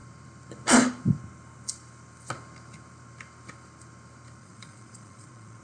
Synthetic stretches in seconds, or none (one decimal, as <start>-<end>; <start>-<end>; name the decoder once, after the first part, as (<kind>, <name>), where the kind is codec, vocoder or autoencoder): 4.4-5.6 (vocoder, Vocos)

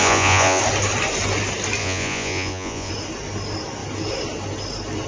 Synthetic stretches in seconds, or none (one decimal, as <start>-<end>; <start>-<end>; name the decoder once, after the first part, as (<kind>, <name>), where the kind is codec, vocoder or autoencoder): 0.0-0.6 (vocoder, Vocos); 1.8-2.9